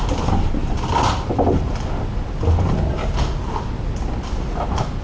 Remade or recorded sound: recorded